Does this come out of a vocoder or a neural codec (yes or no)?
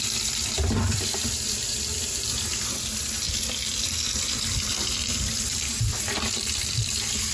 yes